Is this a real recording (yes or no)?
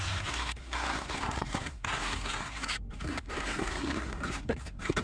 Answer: no